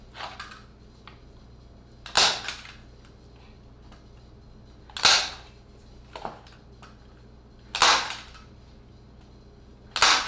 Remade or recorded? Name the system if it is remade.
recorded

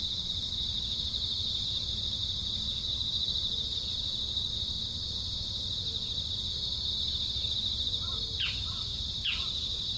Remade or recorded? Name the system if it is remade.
recorded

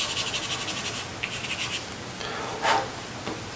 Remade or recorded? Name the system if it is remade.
recorded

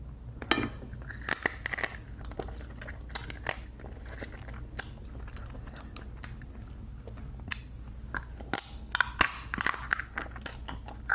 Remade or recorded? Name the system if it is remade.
recorded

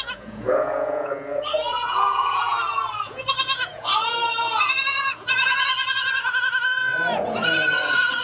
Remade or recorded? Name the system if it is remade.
remade, vocoder, Vocos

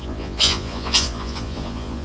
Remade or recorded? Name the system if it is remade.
remade, vocoder, Vocos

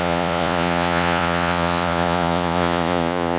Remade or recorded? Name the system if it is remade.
remade, vocoder, Vocos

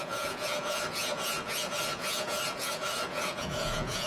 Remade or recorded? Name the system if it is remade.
remade, vocoder, Vocos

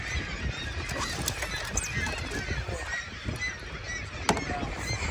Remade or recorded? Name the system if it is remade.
recorded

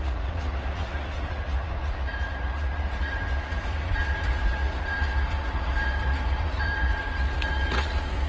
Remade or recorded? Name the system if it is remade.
remade, vocoder, Vocos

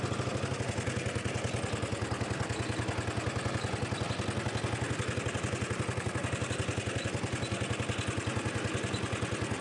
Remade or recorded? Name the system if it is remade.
recorded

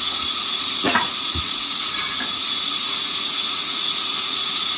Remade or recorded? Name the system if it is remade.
remade, vocoder, Vocos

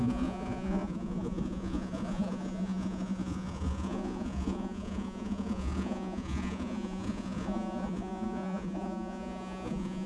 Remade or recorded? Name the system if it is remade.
remade, vocoder, Vocos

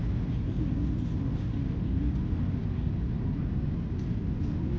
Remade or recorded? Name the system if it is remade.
recorded